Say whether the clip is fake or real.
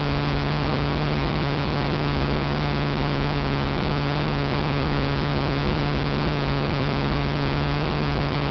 fake